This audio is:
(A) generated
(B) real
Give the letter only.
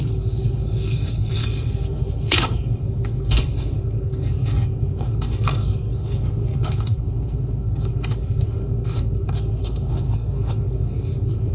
A